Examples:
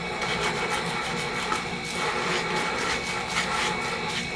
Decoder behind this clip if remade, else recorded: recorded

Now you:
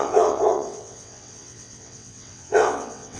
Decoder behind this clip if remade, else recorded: remade, vocoder, WaveNeXt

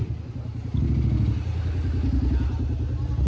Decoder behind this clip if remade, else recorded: recorded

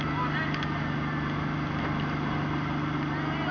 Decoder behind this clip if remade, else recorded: recorded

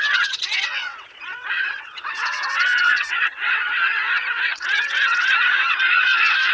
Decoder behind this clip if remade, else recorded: remade, vocoder, WaveNeXt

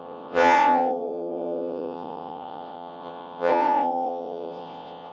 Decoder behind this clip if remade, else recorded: remade, vocoder, WaveNeXt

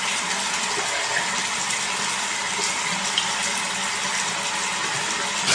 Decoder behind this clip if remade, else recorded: recorded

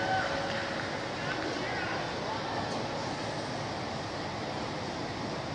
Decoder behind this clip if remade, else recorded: recorded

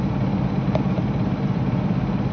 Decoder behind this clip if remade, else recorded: recorded